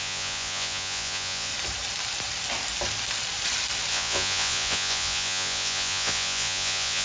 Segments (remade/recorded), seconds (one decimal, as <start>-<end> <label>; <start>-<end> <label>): 0.0-1.5 remade; 1.5-3.9 recorded; 3.9-7.0 remade